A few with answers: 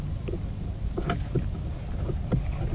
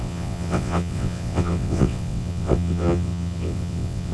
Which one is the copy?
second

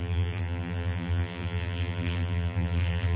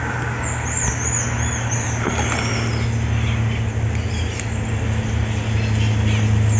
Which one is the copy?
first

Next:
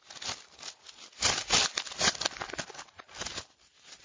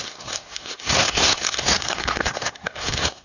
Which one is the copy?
second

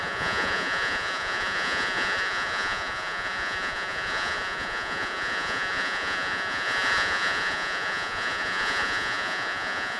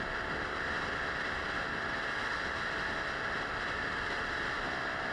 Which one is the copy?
first